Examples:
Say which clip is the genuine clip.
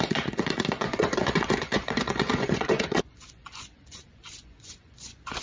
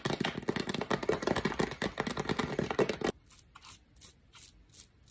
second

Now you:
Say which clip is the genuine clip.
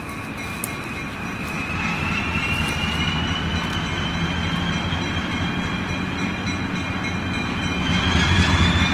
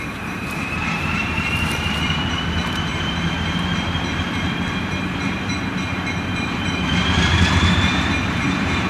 first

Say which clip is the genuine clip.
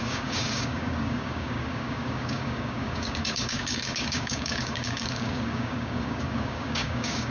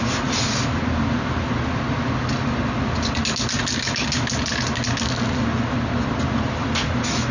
second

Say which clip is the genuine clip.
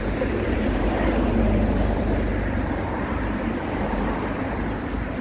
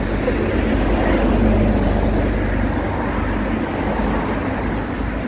second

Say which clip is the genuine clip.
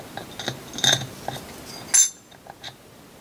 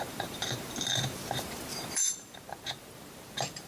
first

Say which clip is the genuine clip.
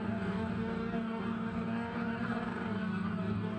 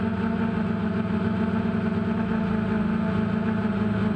second